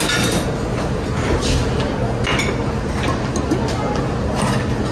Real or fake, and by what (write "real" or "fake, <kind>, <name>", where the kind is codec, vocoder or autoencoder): real